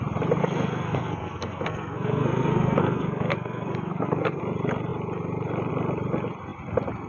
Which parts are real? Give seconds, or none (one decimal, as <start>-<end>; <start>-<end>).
0.0-0.4; 4.4-7.1